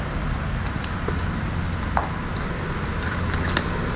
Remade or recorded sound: recorded